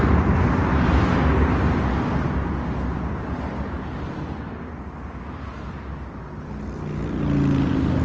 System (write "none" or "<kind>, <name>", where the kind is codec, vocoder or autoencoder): none